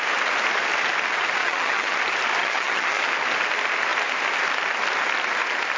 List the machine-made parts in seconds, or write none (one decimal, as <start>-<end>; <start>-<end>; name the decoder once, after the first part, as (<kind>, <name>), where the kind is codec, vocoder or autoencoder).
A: 1.4-2.0 (vocoder, HiFi-GAN); 2.4-3.0